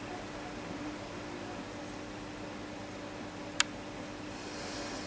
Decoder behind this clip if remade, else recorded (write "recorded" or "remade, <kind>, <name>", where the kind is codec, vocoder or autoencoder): recorded